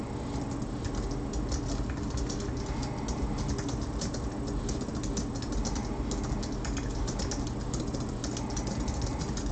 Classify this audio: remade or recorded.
recorded